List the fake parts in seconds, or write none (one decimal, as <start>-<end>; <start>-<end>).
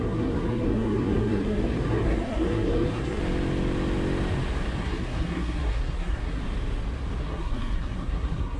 0.0-3.2; 4.8-6.4; 7.2-8.6